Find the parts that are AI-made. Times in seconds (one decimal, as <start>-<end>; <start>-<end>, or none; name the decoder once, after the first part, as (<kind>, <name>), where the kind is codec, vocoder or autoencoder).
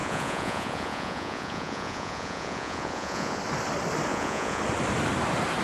0.0-3.4 (vocoder, Vocos); 4.1-4.6